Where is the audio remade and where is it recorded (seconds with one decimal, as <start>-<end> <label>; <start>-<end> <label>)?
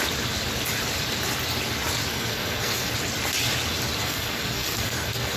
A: 0.0-2.1 recorded; 2.1-2.9 remade; 2.9-4.0 recorded; 4.0-5.4 remade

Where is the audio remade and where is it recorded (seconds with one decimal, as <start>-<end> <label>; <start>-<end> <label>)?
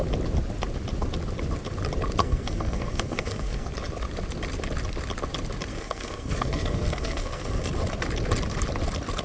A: 0.0-2.2 recorded; 2.2-3.7 remade; 3.7-5.7 recorded; 5.7-7.7 remade; 7.7-9.2 recorded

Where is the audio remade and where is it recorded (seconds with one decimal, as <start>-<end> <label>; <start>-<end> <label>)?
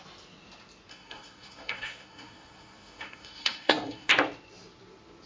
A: 0.0-0.9 recorded; 0.9-4.1 remade; 4.1-5.3 recorded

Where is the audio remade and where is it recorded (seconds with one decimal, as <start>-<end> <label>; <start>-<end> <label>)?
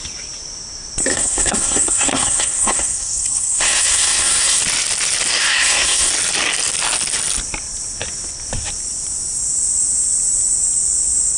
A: 0.0-1.1 recorded; 1.1-4.6 remade; 4.6-5.4 recorded; 5.4-6.1 remade; 6.1-11.4 recorded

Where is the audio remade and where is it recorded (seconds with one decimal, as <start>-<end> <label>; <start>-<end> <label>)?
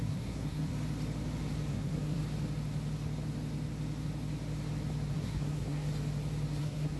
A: 0.0-0.7 remade; 0.7-1.7 recorded; 1.7-2.2 remade; 2.2-5.1 recorded; 5.1-5.9 remade; 5.9-6.6 recorded; 6.6-7.0 remade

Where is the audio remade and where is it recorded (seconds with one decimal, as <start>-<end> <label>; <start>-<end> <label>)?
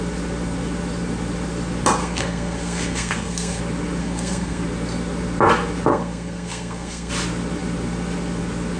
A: 0.0-2.0 recorded; 2.0-3.6 remade; 3.6-4.0 recorded; 4.0-4.6 remade; 4.6-5.9 recorded; 5.9-7.1 remade; 7.1-8.8 recorded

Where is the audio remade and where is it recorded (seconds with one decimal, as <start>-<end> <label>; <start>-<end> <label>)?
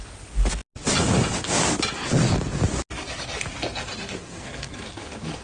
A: 0.0-4.2 recorded; 4.2-4.8 remade; 4.8-5.4 recorded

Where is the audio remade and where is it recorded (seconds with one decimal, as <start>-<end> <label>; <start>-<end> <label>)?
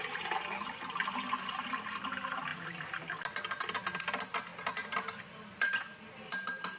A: 0.0-6.8 recorded